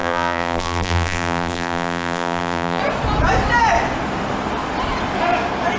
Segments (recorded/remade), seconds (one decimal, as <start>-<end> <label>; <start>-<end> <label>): 0.0-2.8 remade; 2.8-5.8 recorded